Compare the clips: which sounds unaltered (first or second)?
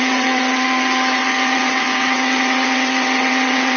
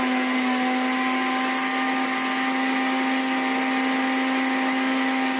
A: second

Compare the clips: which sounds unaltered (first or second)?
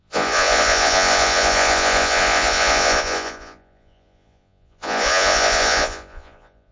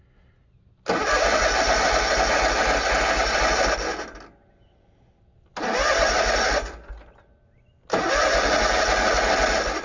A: second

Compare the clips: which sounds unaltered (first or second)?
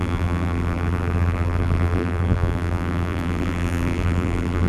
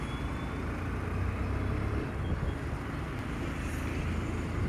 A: second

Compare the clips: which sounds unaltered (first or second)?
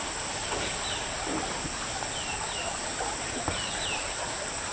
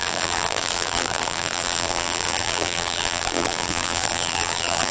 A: first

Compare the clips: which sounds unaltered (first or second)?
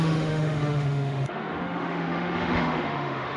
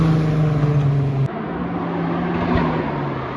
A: second